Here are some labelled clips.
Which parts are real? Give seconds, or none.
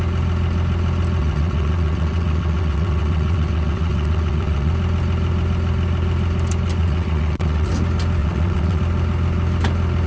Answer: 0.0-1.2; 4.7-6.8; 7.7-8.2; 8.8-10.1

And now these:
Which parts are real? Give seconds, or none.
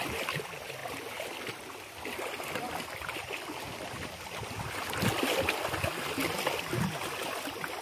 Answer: 0.0-0.8; 4.8-7.8